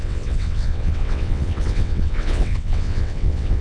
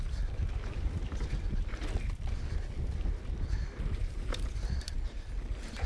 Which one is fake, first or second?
first